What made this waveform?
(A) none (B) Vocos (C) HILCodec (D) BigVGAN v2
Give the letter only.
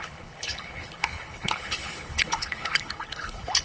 C